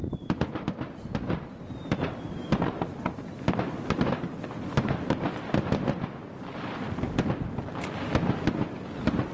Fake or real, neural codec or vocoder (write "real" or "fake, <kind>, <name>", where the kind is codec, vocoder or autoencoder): real